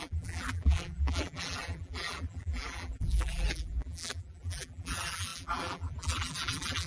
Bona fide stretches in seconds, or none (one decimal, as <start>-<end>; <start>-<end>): none